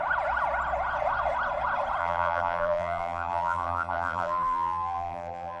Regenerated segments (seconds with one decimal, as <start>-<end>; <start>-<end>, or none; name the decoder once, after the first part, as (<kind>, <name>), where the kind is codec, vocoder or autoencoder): 2.0-5.6 (vocoder, BigVGAN v2)